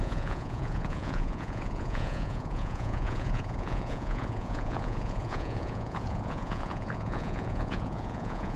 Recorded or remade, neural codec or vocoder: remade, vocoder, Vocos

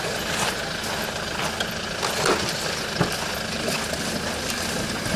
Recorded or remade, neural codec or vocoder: recorded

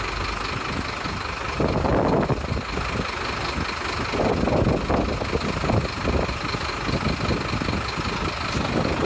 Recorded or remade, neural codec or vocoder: recorded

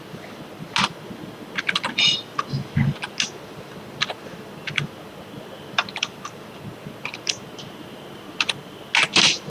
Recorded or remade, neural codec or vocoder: recorded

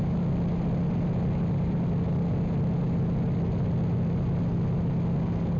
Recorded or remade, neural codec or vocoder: recorded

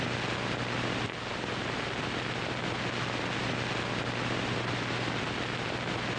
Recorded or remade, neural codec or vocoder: recorded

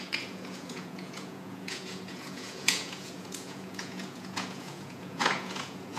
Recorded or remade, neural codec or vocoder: remade, vocoder, Vocos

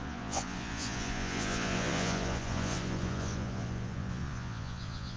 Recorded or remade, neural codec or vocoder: remade, vocoder, Vocos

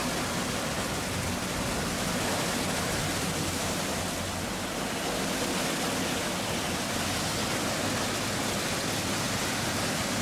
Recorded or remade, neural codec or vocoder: recorded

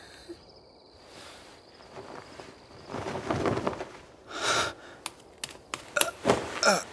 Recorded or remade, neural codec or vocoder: recorded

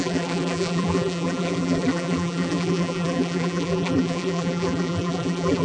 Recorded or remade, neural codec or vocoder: remade, vocoder, BigVGAN v2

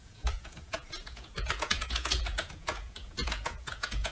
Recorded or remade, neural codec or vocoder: remade, vocoder, Vocos